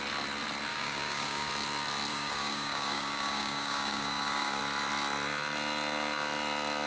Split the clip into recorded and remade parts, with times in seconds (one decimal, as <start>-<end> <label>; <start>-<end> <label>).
0.0-0.7 recorded; 0.7-1.5 remade; 1.5-2.1 recorded; 2.1-4.6 remade; 4.6-6.9 recorded